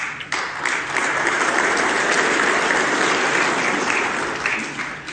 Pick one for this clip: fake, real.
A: real